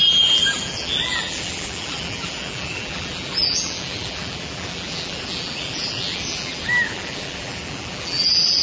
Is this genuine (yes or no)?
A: no